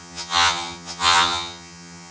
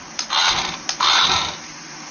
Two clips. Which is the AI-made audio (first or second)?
first